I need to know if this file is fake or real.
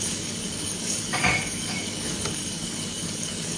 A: fake